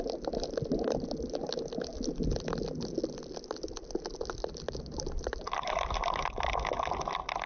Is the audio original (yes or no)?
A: yes